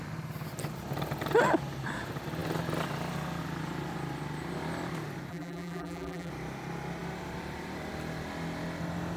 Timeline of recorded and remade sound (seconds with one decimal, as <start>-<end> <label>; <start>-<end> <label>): 0.0-5.3 recorded; 5.3-6.3 remade; 6.3-9.2 recorded